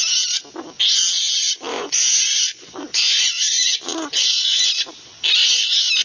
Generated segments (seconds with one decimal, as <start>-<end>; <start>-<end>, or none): 1.7-4.7